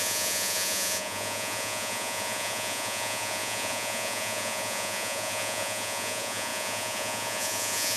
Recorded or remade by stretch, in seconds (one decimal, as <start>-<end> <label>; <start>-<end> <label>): 0.0-8.0 remade

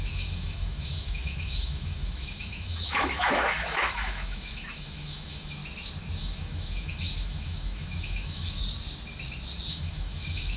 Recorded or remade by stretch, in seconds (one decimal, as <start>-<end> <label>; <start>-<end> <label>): 0.0-5.6 remade; 5.6-6.2 recorded; 6.2-8.6 remade; 8.6-9.7 recorded; 9.7-10.6 remade

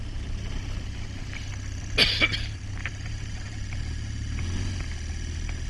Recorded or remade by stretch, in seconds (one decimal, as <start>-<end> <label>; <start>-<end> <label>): 0.0-2.8 recorded; 2.8-3.8 remade; 3.8-5.7 recorded

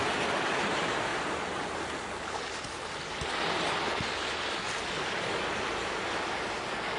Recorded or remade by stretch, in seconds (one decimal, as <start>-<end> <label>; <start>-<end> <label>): 0.0-7.0 recorded

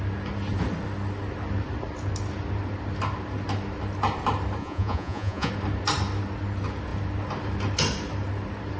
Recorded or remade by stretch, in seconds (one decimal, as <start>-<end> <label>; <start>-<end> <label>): 0.0-4.6 recorded; 4.6-5.5 remade; 5.5-8.8 recorded